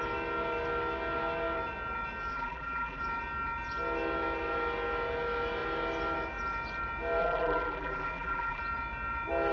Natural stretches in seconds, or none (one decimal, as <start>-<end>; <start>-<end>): 0.0-2.3; 3.0-7.2; 8.6-9.5